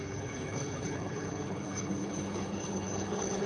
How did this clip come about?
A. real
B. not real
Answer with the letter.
B